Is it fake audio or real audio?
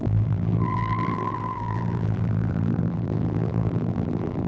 fake